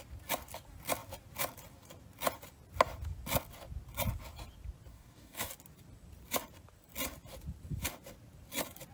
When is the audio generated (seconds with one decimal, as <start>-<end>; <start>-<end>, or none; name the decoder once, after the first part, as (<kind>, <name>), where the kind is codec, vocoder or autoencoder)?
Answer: 4.9-5.5 (codec, DAC)